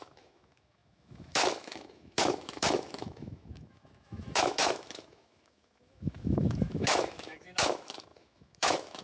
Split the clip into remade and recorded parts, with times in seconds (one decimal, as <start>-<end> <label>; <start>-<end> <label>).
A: 0.0-9.0 remade